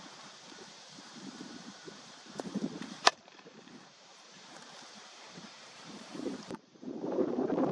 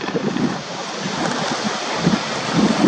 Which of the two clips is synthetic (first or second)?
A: first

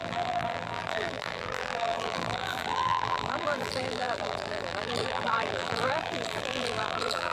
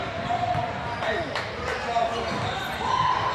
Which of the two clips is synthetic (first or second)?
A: first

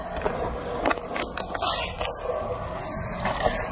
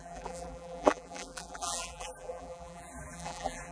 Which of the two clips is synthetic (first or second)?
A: second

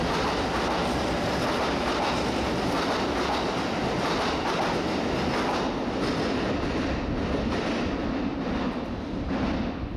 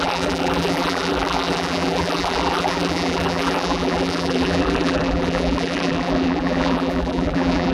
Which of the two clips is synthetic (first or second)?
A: second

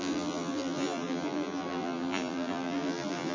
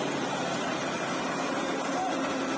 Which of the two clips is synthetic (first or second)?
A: first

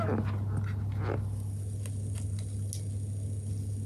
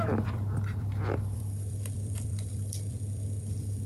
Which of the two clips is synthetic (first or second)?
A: second